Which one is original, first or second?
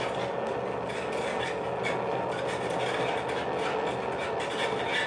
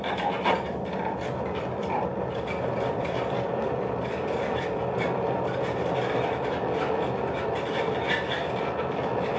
first